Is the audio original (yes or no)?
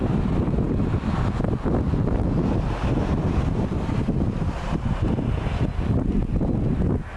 yes